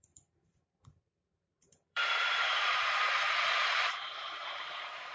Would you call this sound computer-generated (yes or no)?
yes